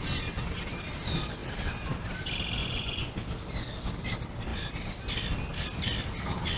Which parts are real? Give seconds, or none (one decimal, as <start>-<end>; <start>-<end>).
0.0-2.6; 3.2-6.6